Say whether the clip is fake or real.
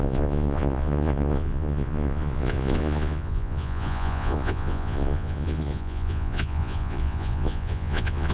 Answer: fake